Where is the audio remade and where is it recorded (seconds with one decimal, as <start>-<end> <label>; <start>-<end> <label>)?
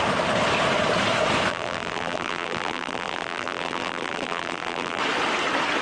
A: 0.0-1.5 recorded; 1.5-5.0 remade; 5.0-5.8 recorded